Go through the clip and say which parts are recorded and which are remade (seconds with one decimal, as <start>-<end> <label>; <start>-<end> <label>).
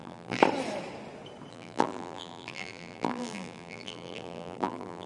0.0-0.4 remade; 0.4-1.5 recorded; 1.5-5.1 remade